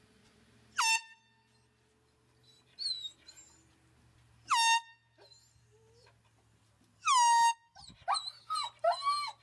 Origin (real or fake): real